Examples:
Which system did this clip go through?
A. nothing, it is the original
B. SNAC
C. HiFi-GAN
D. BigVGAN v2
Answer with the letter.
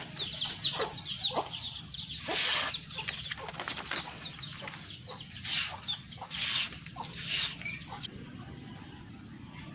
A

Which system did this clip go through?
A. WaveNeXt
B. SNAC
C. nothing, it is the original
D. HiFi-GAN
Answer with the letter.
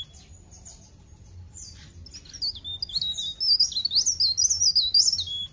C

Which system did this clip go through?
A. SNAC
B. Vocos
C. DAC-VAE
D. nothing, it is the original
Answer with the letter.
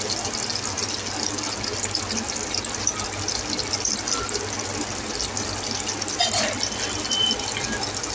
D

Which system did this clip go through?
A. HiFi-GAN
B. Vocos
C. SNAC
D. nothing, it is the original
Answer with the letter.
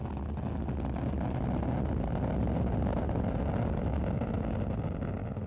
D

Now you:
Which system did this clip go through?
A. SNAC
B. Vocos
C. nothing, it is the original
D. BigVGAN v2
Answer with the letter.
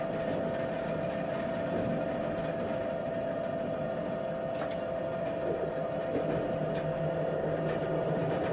C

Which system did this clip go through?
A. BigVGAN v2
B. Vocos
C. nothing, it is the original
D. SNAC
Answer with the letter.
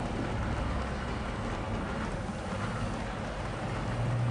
C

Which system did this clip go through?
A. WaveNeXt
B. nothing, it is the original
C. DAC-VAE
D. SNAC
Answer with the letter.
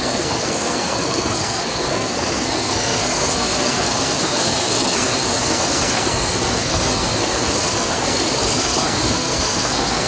D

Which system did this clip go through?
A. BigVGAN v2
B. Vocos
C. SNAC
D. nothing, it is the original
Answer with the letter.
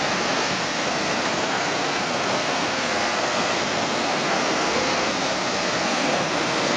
C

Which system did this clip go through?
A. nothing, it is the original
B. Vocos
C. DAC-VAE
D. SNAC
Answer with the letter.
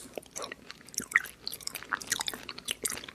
A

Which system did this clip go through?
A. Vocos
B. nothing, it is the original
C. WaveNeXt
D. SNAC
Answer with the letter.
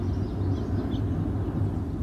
B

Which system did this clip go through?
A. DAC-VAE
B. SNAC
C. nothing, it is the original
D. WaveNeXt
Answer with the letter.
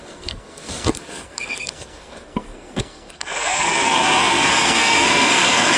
B